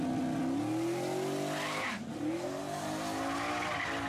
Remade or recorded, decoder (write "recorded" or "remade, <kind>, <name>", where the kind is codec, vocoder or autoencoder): recorded